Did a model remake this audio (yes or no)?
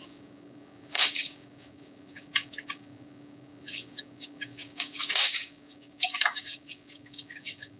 yes